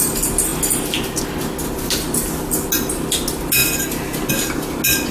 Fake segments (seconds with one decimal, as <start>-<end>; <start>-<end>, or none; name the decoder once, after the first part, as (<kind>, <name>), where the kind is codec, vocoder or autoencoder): none